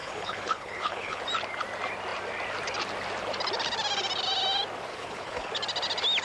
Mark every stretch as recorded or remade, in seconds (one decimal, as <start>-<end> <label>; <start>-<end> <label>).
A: 0.0-1.2 remade; 1.2-4.9 recorded; 4.9-5.5 remade; 5.5-6.2 recorded